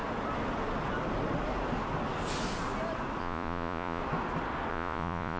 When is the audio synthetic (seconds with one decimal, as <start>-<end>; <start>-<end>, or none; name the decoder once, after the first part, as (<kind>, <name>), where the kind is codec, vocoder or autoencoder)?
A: 3.2-4.0 (vocoder, Vocos); 4.7-5.4